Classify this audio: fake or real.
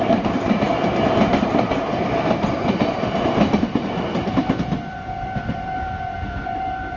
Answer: fake